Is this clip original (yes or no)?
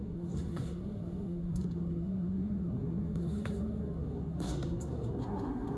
no